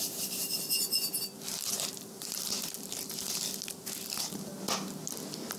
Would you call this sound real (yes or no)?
yes